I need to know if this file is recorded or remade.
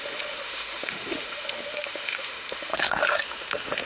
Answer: remade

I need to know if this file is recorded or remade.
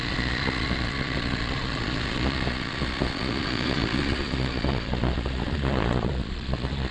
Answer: remade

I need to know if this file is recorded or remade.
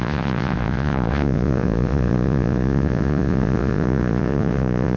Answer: remade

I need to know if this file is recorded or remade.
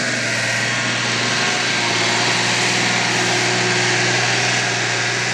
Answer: recorded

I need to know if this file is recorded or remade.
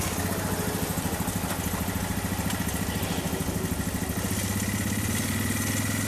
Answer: recorded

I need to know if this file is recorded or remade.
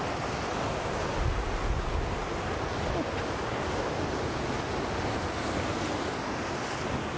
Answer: recorded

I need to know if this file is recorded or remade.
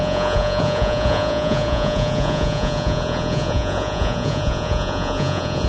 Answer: remade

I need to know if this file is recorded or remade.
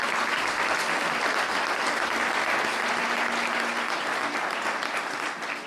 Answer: recorded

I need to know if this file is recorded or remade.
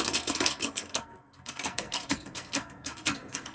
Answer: remade